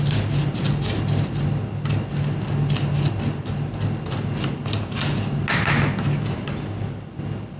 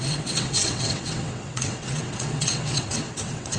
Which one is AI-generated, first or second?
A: second